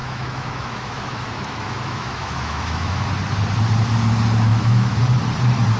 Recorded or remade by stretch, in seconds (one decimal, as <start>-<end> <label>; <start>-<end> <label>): 0.0-3.1 remade; 3.1-4.5 recorded; 4.5-5.0 remade; 5.0-5.8 recorded